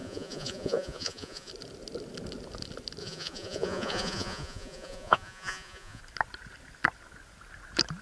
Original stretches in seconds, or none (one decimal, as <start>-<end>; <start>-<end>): 1.5-3.0; 6.0-8.0